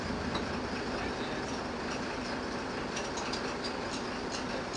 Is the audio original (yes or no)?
yes